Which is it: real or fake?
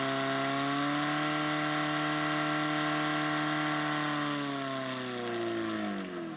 real